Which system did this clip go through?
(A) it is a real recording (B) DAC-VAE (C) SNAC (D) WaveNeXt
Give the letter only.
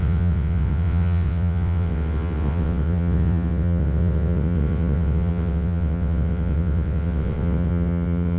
D